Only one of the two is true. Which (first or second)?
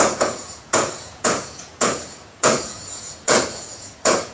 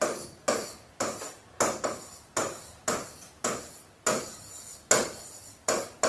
second